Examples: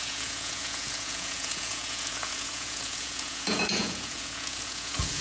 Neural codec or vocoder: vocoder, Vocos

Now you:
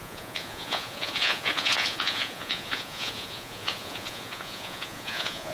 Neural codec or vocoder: vocoder, Vocos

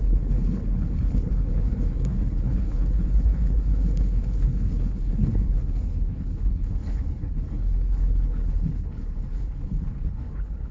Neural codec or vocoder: codec, HILCodec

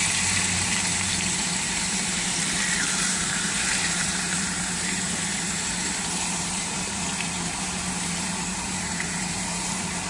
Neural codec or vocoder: vocoder, BigVGAN v2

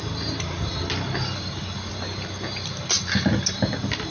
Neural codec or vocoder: none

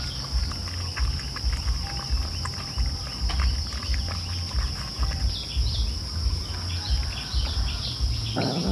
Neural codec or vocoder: none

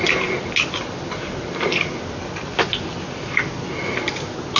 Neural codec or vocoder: none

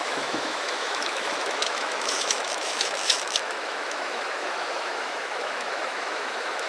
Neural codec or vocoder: autoencoder, DAC-VAE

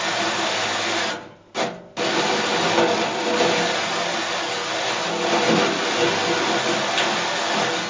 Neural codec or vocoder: none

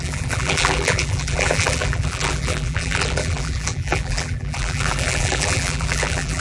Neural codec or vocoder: vocoder, BigVGAN v2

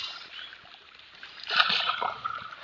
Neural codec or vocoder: vocoder, BigVGAN v2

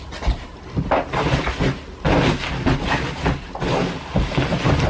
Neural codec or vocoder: none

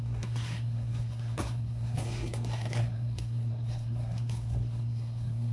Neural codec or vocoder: codec, SNAC